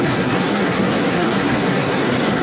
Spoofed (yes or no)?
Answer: yes